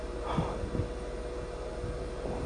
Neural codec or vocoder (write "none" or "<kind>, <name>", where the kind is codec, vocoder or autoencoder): none